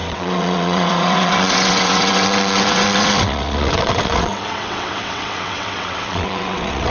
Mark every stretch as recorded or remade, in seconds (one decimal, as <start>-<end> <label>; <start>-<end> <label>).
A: 0.0-6.9 remade